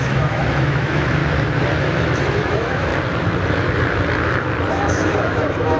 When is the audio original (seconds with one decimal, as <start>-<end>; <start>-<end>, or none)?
1.2-1.8; 2.9-4.7